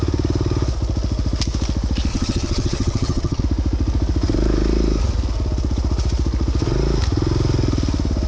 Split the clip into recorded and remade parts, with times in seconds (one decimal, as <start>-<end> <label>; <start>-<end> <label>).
0.0-2.1 recorded; 2.1-3.4 remade; 3.4-8.3 recorded